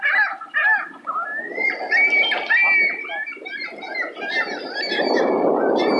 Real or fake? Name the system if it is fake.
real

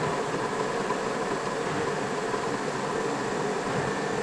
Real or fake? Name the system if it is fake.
real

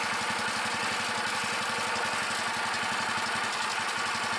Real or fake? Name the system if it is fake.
real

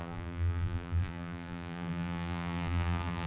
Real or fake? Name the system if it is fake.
fake, vocoder, BigVGAN v2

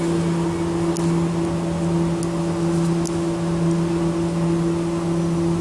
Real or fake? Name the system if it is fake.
real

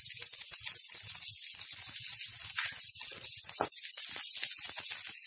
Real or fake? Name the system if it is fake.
real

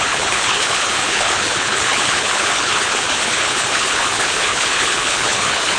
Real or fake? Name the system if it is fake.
fake, codec, HILCodec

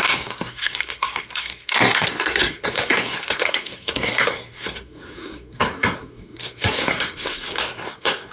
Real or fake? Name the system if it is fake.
fake, codec, SNAC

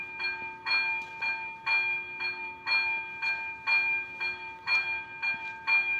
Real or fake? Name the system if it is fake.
real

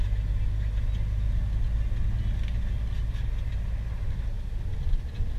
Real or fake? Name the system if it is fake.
real